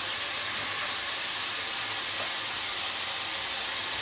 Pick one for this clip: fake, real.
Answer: real